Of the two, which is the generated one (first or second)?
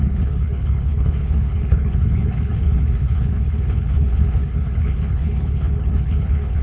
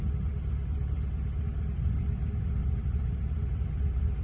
first